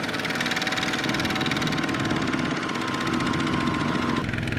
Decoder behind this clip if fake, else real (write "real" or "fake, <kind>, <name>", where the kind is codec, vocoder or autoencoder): real